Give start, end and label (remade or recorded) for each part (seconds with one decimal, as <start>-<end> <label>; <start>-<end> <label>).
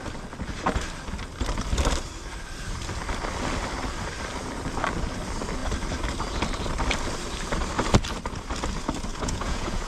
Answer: 0.0-9.1 recorded; 9.1-9.9 remade